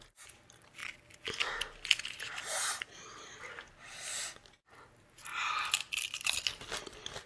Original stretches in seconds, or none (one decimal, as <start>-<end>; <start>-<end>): 0.0-7.3